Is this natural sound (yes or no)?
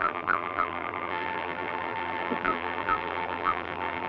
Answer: no